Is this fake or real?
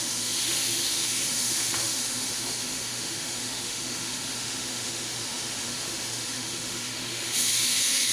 fake